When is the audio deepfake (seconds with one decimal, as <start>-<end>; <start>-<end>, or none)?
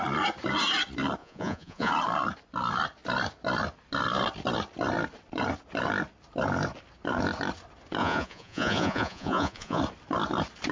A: 1.2-1.9; 8.0-9.8